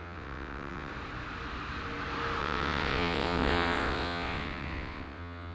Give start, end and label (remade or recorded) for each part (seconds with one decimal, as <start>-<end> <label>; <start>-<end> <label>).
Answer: 0.0-0.9 remade; 0.9-2.4 recorded; 2.4-5.5 remade